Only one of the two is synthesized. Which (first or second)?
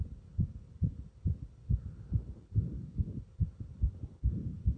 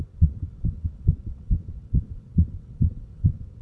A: second